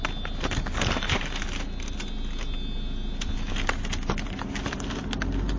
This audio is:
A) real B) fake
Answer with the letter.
A